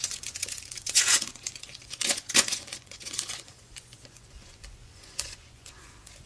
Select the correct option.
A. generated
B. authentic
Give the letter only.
A